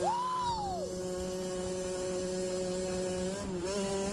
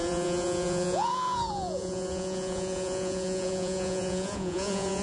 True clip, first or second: first